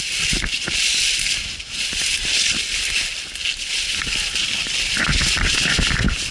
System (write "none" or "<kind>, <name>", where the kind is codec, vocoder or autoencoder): none